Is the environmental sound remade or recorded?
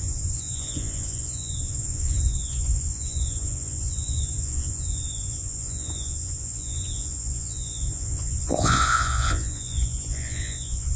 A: remade